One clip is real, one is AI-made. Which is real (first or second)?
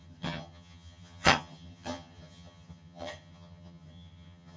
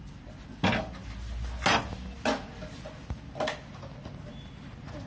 second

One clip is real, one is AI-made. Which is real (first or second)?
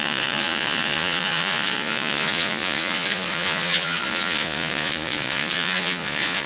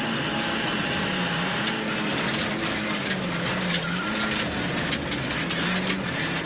second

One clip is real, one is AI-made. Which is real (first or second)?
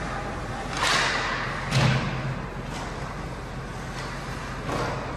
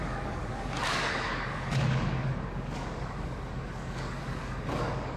first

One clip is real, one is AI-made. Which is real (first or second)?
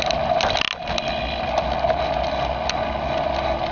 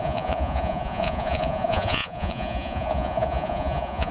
first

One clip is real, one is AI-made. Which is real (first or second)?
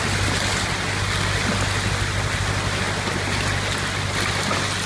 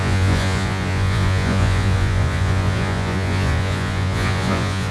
first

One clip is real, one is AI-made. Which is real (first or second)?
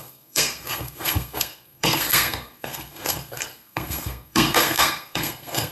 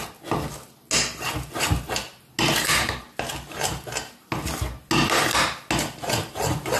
second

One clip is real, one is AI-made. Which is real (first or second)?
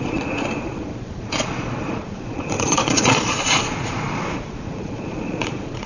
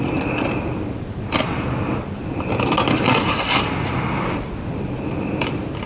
second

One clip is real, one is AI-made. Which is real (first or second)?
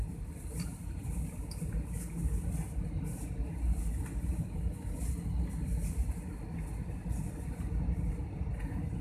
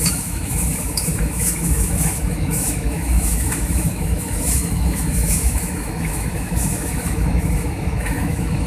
first